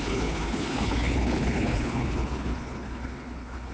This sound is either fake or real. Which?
fake